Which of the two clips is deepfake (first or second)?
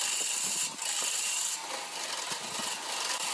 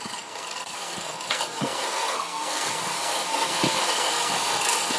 second